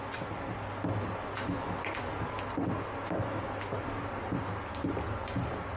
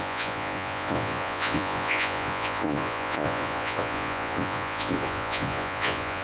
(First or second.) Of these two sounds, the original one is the first